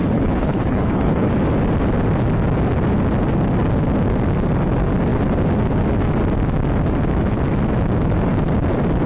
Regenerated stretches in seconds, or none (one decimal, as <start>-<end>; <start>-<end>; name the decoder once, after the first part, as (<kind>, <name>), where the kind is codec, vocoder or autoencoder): 0.0-1.3 (codec, HILCodec)